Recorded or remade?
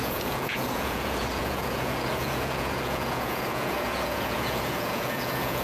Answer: remade